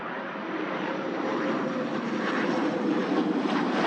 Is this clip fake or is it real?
fake